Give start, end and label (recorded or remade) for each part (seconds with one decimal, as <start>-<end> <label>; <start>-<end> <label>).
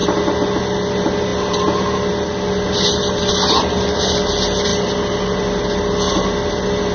0.0-0.6 recorded; 0.6-4.7 remade; 4.7-6.5 recorded; 6.5-6.9 remade